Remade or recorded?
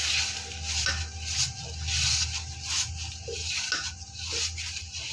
recorded